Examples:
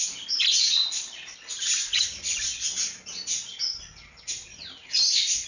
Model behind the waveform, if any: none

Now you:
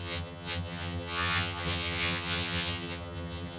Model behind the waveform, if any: vocoder, HiFi-GAN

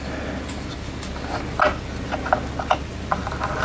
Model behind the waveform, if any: none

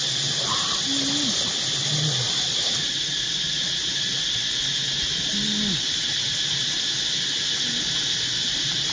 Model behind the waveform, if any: none